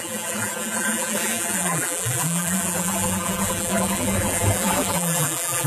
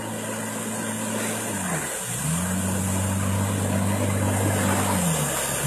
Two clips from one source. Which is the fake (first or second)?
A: first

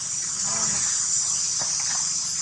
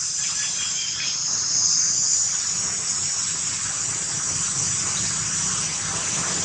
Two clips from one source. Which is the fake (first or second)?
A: first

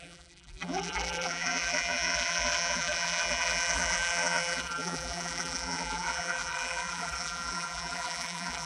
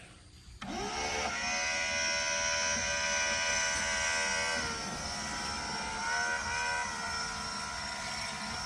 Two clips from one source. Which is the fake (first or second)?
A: first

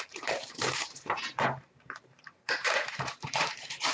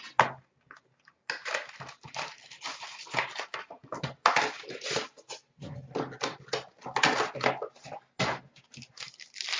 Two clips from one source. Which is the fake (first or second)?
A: first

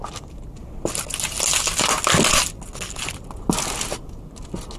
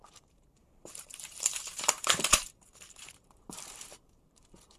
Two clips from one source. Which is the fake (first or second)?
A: second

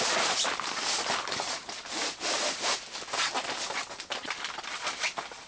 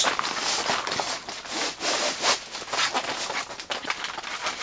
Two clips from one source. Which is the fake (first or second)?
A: first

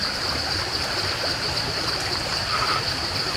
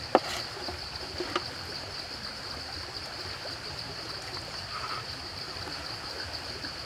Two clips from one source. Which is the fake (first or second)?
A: first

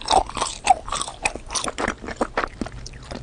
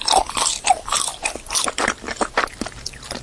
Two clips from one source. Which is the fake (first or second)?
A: second